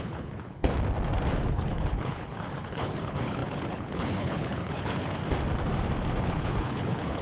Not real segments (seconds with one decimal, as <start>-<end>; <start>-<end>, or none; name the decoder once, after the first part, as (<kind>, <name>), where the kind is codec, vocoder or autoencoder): 0.0-0.7 (codec, HILCodec); 1.5-5.2; 6.2-7.2